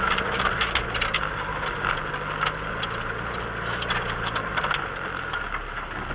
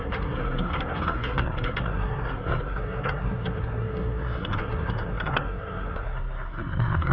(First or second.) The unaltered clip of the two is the first